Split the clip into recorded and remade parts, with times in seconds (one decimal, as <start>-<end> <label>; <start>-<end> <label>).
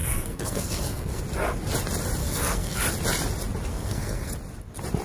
0.0-1.2 remade; 1.2-2.2 recorded; 2.2-2.8 remade; 2.8-3.7 recorded; 3.7-4.3 remade; 4.3-5.0 recorded